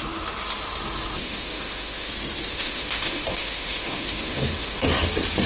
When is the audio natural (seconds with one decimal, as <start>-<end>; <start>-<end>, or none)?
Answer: 0.0-1.2; 2.1-2.5; 4.9-5.5